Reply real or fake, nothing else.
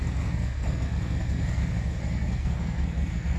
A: fake